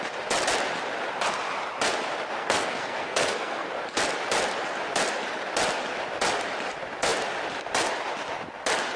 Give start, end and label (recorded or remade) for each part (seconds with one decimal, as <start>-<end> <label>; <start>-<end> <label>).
0.0-2.4 recorded; 2.4-3.7 remade; 3.7-9.0 recorded